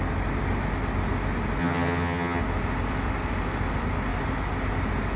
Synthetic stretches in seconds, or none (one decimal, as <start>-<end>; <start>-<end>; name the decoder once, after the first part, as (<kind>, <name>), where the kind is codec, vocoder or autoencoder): 1.6-2.4 (vocoder, HiFi-GAN)